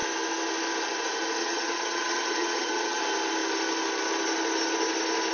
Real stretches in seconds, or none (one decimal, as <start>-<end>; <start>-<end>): 0.0-1.4; 3.0-5.3